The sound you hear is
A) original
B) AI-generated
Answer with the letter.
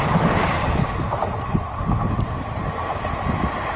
A